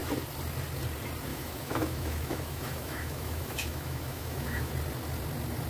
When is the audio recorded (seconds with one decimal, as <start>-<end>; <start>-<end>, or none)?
0.0-1.3; 4.7-5.7